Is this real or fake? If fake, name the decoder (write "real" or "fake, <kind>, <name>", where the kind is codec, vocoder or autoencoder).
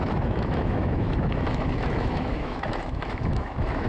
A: fake, autoencoder, DAC-VAE